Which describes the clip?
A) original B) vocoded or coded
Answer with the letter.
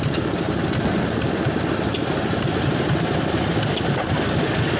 A